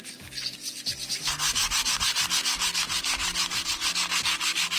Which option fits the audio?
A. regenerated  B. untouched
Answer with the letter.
B